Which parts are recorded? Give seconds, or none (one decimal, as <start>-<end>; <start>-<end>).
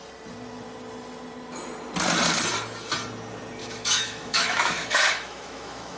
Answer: 0.0-3.6